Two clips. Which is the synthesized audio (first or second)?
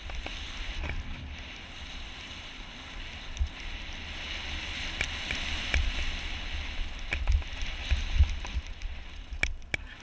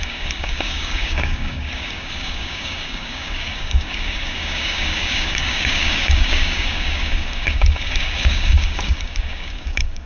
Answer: second